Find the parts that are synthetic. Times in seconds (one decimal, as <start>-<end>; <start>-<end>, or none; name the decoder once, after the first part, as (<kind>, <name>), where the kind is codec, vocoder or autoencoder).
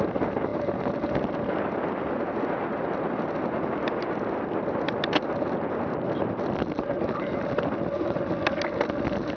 none